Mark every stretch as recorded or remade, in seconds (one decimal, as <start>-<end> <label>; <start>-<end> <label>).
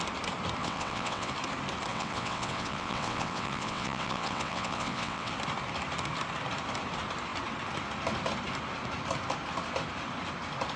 0.0-0.6 recorded; 0.6-1.3 remade; 1.3-1.9 recorded; 1.9-5.3 remade; 5.3-10.8 recorded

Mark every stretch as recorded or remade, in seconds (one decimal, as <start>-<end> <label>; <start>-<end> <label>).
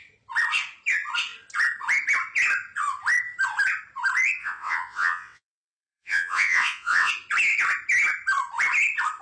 0.0-4.4 recorded; 4.4-7.1 remade; 7.1-9.2 recorded